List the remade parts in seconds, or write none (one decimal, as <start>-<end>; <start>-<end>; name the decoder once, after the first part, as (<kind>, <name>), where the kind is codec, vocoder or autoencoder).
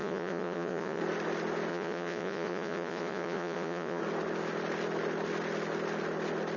0.0-1.0 (vocoder, Vocos); 1.7-4.0